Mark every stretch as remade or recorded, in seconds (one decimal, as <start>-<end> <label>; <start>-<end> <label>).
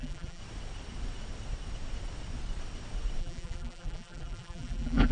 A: 0.0-0.4 remade; 0.4-3.2 recorded; 3.2-5.1 remade